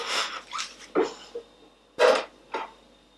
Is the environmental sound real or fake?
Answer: real